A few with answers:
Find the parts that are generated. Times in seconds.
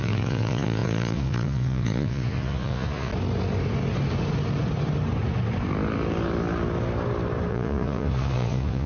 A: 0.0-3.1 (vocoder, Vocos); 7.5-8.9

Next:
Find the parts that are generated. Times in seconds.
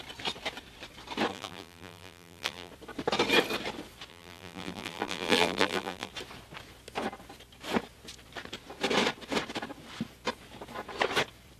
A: 1.3-2.7 (vocoder, BigVGAN v2); 4.1-6.1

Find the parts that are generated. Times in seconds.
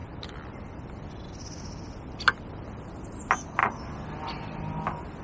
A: none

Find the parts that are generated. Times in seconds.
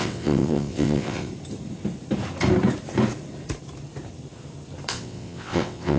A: 0.0-1.3 (vocoder, WaveNeXt); 4.9-6.0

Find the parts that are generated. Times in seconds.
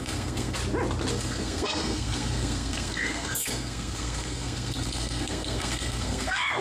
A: 0.0-0.6 (codec, SNAC); 1.1-6.6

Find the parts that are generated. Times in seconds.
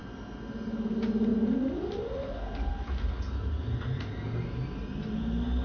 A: none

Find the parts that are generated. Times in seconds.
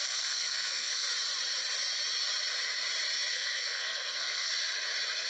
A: 0.0-1.1 (codec, SNAC); 3.3-4.5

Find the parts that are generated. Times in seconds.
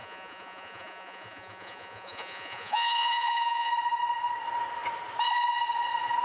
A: 0.0-3.7 (vocoder, Vocos)